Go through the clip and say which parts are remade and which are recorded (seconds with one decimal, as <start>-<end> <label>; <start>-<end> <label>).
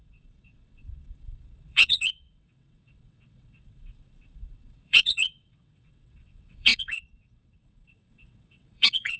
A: 0.0-9.2 remade